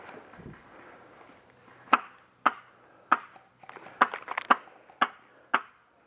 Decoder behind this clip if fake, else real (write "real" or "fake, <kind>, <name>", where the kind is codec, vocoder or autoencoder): real